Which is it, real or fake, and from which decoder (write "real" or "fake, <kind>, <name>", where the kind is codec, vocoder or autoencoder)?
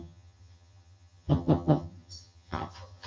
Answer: fake, vocoder, HiFi-GAN